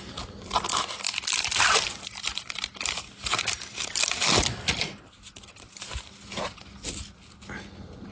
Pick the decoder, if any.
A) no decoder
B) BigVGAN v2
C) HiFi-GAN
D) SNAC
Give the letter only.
A